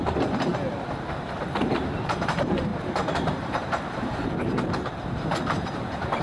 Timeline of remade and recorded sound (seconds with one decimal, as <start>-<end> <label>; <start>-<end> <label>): 0.0-0.5 remade; 0.5-1.1 recorded; 1.1-6.2 remade